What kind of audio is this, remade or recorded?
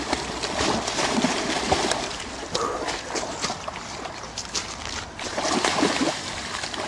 remade